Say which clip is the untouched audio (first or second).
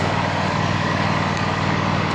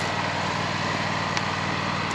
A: second